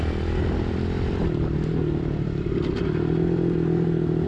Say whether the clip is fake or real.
real